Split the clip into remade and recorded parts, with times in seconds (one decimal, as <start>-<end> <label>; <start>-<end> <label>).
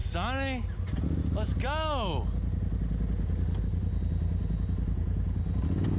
0.0-6.0 recorded